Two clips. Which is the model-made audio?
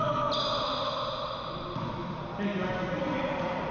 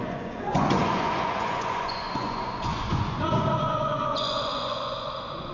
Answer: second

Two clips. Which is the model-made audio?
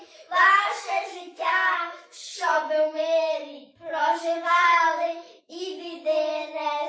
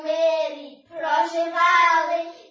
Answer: first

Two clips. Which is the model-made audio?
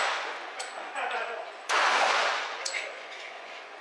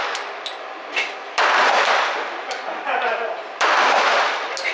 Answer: first